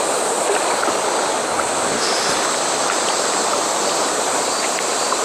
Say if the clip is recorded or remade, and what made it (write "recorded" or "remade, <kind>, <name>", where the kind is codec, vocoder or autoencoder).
recorded